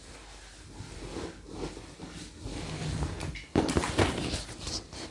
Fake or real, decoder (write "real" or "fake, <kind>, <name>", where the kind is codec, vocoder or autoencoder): real